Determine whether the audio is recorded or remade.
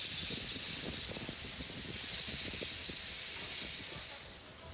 recorded